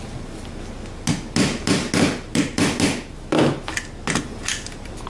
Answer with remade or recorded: recorded